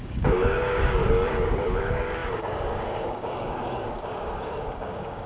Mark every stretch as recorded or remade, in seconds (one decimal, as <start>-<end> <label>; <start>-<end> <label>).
0.0-1.0 remade; 1.0-1.8 recorded; 1.8-5.3 remade